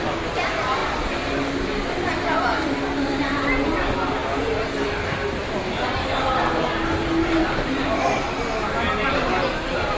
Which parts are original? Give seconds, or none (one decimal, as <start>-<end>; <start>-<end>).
0.0-10.0